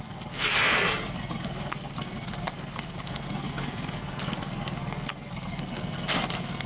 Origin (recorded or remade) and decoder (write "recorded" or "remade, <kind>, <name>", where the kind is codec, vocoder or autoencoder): remade, codec, SNAC